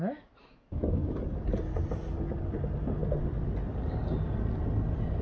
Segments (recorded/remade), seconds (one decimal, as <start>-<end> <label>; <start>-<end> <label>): 0.0-0.4 recorded; 0.4-1.2 remade; 1.2-5.2 recorded

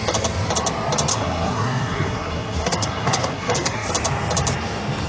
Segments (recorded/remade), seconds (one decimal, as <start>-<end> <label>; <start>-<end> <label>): 0.0-1.1 recorded; 1.1-3.9 remade; 3.9-5.1 recorded

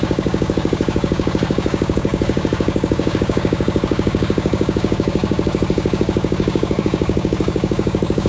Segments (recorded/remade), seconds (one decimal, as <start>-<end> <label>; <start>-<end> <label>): 0.0-8.3 remade

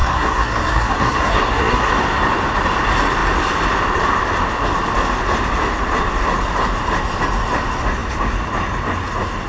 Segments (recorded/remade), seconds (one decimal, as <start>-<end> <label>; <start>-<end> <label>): 0.0-1.9 remade; 1.9-9.5 recorded

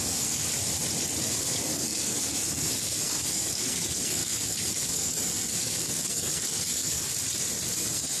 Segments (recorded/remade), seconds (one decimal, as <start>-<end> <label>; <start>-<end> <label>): 0.0-0.4 remade; 0.4-1.2 recorded; 1.2-7.1 remade; 7.1-7.7 recorded; 7.7-8.2 remade